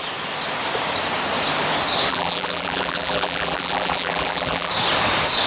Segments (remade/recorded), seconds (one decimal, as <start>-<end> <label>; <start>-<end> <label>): 0.0-2.1 recorded; 2.1-4.7 remade; 4.7-5.5 recorded